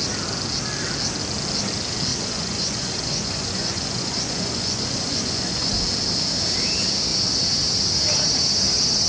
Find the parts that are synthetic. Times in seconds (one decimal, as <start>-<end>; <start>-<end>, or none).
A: 2.1-5.7